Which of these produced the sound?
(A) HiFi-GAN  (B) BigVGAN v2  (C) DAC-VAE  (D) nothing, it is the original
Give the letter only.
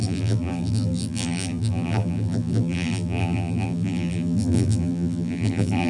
B